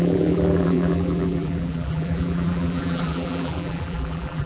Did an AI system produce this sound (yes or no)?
yes